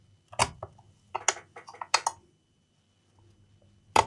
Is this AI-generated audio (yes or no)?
no